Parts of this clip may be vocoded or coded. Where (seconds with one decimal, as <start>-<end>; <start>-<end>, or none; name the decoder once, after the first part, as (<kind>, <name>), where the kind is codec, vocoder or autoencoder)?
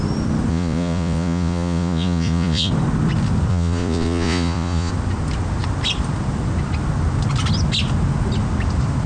0.5-2.7 (vocoder, Vocos); 3.5-4.9